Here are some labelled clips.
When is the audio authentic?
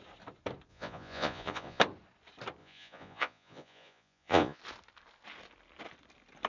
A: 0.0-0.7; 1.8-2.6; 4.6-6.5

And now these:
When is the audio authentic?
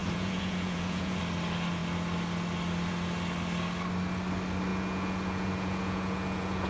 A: 1.2-4.7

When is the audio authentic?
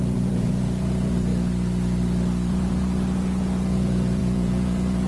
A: 1.3-2.5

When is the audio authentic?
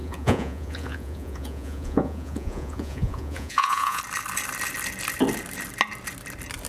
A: 4.0-6.7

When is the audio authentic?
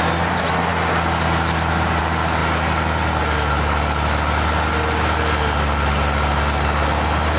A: 0.0-7.4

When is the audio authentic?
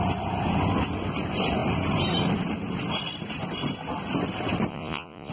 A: 0.0-4.7